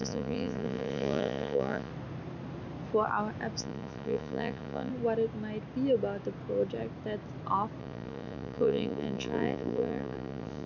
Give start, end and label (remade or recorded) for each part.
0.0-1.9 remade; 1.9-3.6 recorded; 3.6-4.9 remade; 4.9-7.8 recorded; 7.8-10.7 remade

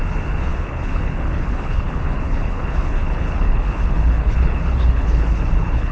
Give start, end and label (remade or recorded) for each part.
0.0-5.9 remade